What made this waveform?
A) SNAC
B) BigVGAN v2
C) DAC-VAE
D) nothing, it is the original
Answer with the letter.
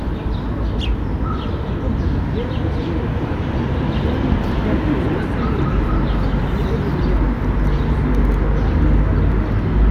D